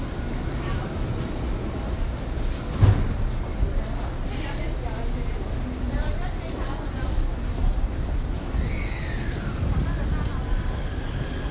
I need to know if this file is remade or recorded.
recorded